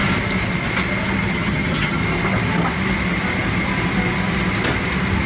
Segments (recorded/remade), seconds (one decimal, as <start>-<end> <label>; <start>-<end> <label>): 0.0-1.3 recorded; 1.3-2.0 remade; 2.0-5.3 recorded